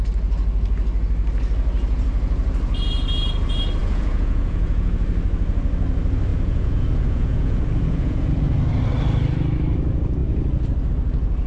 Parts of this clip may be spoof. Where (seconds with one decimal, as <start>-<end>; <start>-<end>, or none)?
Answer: 3.8-4.9; 6.3-8.4